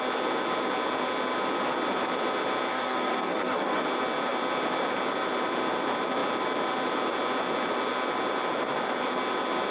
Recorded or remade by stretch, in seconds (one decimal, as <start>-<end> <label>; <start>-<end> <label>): 0.0-2.7 recorded; 2.7-3.8 remade; 3.8-9.7 recorded